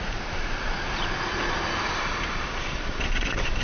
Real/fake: real